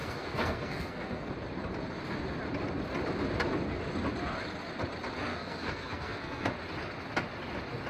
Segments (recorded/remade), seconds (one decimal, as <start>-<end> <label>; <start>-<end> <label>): 0.0-1.3 remade; 1.3-5.3 recorded; 5.3-6.5 remade; 6.5-7.9 recorded